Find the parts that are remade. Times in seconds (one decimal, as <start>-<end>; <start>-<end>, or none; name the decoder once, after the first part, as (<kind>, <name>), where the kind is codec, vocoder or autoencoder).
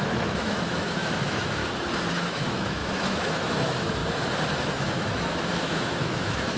0.0-1.6 (autoencoder, DAC-VAE); 2.1-4.0; 4.6-6.6